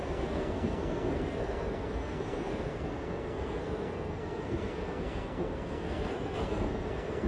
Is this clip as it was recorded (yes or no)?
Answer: no